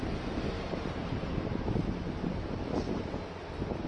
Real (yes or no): yes